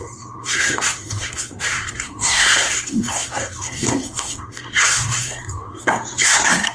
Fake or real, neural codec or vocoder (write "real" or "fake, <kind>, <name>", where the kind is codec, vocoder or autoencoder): fake, codec, SNAC